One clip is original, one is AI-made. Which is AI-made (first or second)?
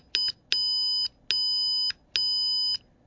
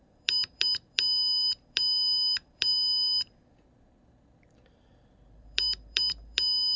second